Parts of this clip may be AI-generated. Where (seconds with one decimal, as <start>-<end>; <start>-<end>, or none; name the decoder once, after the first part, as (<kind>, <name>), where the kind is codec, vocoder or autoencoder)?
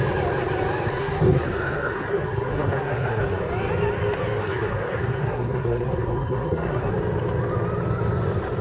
1.0-3.4 (codec, SNAC); 4.4-6.9